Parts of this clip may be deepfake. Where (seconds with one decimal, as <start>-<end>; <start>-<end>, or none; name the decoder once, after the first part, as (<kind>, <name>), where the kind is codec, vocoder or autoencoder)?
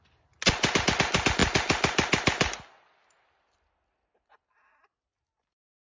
none